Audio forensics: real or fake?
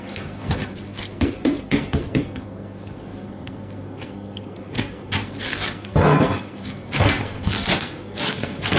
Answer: fake